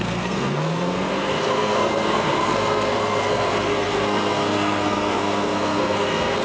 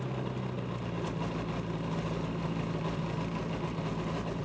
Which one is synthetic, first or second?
first